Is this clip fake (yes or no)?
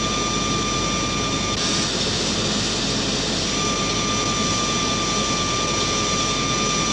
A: no